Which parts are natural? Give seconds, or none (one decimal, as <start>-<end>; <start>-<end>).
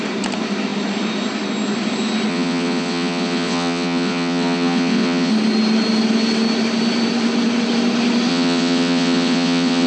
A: 0.0-2.3; 5.3-8.3